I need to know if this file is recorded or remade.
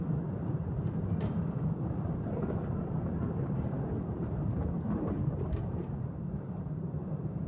remade